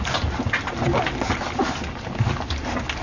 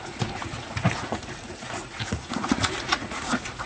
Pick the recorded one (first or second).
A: first